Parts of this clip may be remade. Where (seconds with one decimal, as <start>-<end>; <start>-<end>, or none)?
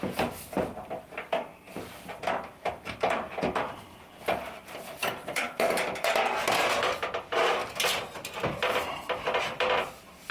none